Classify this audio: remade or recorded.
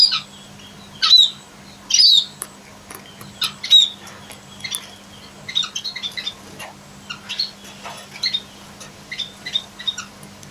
recorded